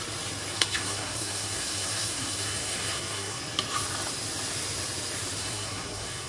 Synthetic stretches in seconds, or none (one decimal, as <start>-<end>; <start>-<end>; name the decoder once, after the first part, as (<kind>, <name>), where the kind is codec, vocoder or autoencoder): 0.5-3.4 (codec, SNAC); 5.4-6.3